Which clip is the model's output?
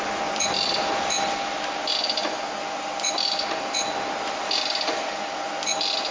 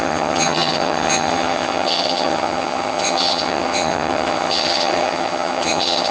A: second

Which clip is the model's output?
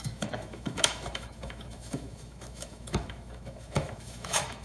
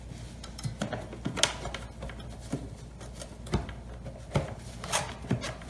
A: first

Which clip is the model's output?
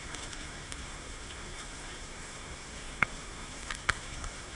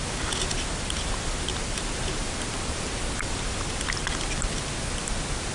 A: first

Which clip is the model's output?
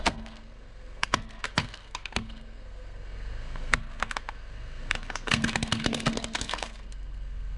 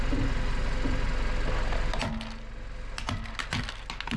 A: first